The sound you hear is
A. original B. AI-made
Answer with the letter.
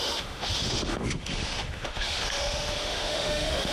B